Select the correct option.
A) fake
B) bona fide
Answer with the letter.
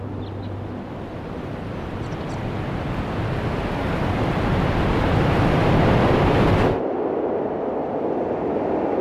B